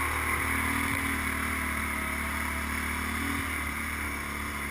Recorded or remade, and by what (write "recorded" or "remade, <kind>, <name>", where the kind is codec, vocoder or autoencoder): recorded